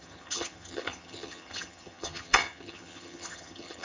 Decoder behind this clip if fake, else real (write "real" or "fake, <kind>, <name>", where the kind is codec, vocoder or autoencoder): fake, vocoder, HiFi-GAN